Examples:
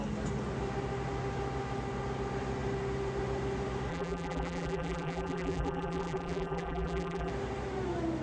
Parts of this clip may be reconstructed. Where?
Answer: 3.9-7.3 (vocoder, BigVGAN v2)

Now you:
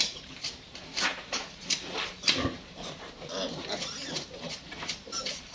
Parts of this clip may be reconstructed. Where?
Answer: none

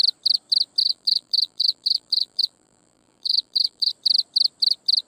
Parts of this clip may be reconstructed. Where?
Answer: 0.8-3.9 (vocoder, BigVGAN v2)

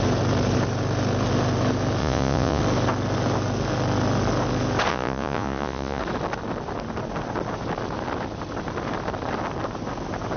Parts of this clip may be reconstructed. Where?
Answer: 2.0-2.6 (vocoder, Vocos); 4.9-6.0

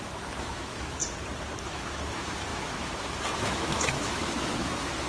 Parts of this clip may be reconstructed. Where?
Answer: 0.0-1.0 (autoencoder, DAC-VAE); 1.6-5.1

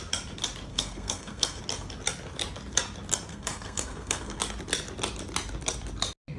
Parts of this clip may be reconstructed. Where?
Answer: 0.7-1.6 (codec, SNAC); 3.3-4.4

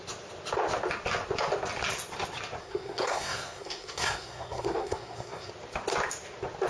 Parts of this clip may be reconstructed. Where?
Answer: 2.6-5.5 (codec, SNAC)

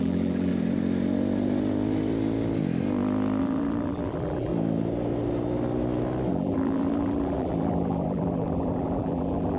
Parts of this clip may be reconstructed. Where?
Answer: 0.0-0.5 (vocoder, BigVGAN v2); 3.4-4.5; 6.3-9.6